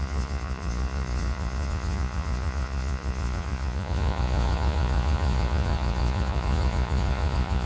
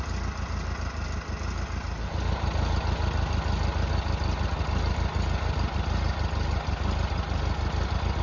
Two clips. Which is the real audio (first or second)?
second